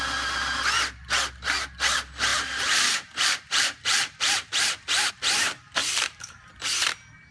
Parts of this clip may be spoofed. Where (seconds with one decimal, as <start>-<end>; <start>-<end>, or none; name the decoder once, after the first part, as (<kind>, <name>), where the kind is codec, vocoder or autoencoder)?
2.3-5.1 (vocoder, BigVGAN v2); 5.8-6.5